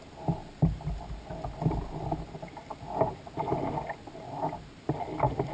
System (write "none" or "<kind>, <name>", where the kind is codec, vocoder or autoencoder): none